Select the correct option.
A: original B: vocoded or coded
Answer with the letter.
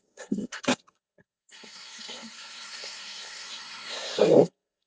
B